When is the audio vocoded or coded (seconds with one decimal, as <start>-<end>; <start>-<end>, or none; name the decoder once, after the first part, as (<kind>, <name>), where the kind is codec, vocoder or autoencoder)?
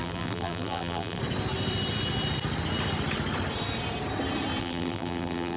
0.0-1.2 (vocoder, BigVGAN v2); 4.6-5.6